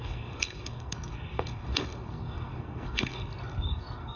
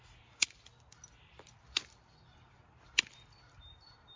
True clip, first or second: second